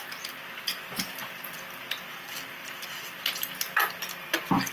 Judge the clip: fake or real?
real